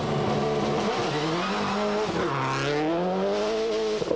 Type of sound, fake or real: real